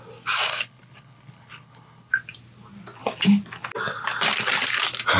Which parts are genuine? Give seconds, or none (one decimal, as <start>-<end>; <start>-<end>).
0.0-0.5; 2.1-5.2